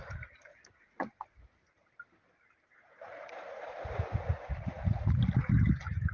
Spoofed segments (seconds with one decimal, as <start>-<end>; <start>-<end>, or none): 0.5-1.7; 3.1-5.2

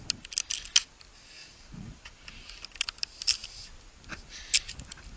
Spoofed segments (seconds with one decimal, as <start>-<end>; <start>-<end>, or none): 1.4-2.2

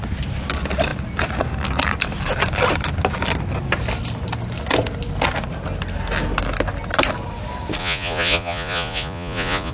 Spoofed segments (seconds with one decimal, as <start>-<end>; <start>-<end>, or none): 7.8-9.7

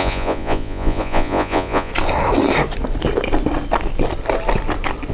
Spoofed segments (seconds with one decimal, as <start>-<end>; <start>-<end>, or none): 0.0-1.9

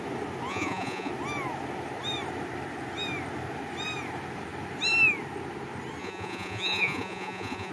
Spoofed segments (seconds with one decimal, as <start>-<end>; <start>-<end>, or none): 0.5-1.1; 6.0-7.7

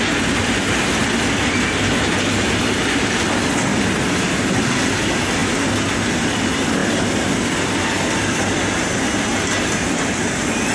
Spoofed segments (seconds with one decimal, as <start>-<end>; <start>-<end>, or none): none

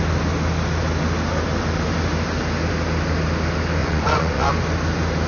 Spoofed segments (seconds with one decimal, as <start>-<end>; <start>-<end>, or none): 3.8-4.5